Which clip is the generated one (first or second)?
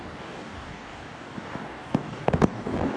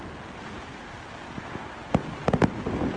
first